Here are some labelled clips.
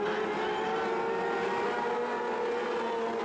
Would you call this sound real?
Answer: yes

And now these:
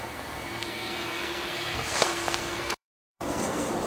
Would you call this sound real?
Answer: no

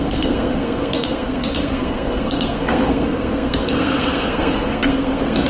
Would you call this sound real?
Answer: no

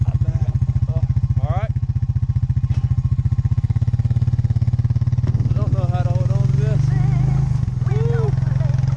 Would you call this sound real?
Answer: yes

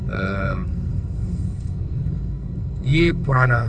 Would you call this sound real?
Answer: no